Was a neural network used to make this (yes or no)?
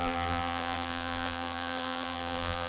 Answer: yes